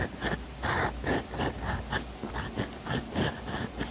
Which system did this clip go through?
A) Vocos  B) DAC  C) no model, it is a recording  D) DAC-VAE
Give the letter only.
C